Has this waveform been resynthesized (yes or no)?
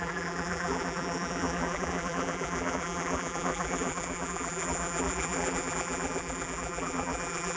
yes